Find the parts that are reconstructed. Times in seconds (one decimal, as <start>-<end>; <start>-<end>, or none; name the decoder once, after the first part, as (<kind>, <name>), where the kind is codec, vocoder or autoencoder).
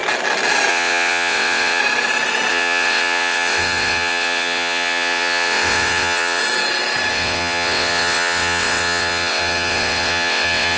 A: 0.7-1.8 (vocoder, WaveNeXt); 2.5-6.4; 7.1-10.8